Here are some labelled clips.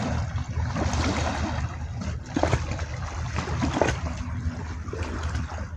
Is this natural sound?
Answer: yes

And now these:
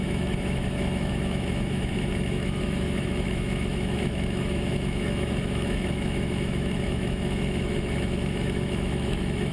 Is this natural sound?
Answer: no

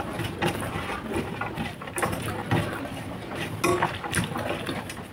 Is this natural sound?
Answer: yes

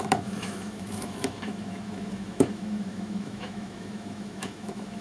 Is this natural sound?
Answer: no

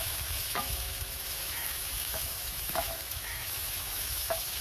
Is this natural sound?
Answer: no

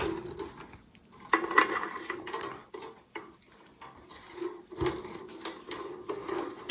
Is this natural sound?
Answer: yes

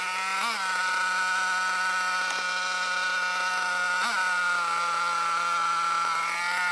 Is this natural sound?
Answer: yes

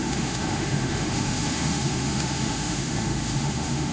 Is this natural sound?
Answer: no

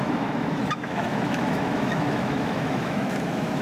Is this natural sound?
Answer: no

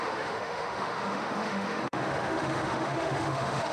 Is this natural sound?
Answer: no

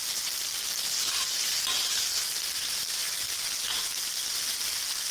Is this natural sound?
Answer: yes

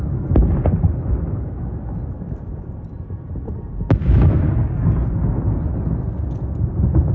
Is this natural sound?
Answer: yes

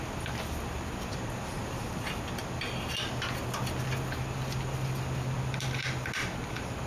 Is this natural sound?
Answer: yes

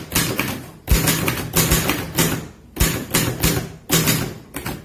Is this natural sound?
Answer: yes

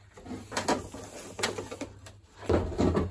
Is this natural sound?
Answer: yes